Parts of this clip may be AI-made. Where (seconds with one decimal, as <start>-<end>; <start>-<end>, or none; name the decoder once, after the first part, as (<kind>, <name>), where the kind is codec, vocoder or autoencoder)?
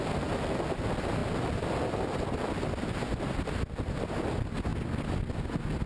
none